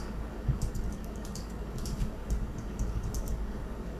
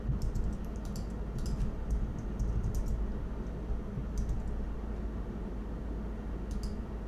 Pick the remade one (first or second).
first